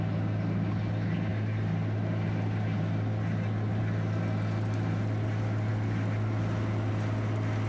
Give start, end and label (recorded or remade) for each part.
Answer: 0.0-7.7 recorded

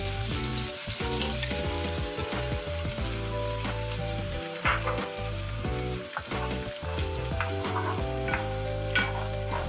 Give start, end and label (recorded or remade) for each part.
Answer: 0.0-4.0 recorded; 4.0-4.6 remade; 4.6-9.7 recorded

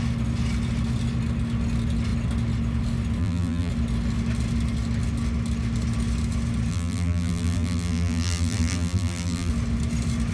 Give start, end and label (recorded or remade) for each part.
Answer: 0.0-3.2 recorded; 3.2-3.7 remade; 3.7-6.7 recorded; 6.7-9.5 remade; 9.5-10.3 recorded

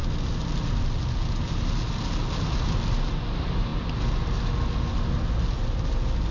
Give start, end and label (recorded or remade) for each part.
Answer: 0.0-6.3 recorded

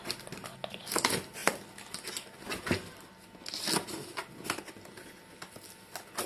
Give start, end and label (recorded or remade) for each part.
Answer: 0.0-6.3 recorded

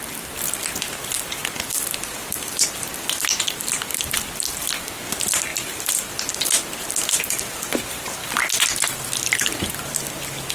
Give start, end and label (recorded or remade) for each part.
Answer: 0.0-10.5 recorded